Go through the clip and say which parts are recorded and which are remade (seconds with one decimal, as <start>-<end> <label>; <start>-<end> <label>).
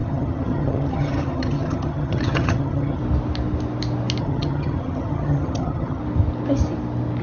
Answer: 0.0-3.0 remade; 3.0-4.2 recorded; 4.2-6.0 remade; 6.0-7.2 recorded